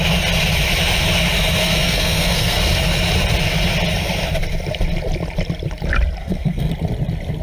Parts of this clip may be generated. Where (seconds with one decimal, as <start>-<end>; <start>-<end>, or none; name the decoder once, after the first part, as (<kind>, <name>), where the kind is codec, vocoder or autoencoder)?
1.6-2.6 (codec, SNAC); 6.2-6.7